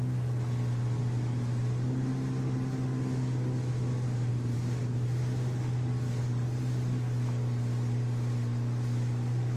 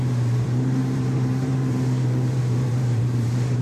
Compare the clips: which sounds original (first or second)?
first